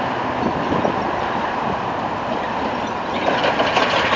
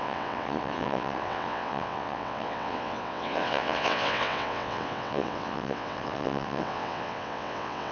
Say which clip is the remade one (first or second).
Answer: second